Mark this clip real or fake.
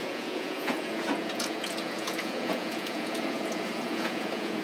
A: fake